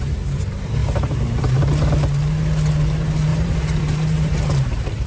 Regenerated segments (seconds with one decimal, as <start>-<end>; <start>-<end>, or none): 0.8-1.7; 3.3-5.1

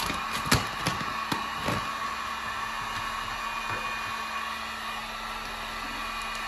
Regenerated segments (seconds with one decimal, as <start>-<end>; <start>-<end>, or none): none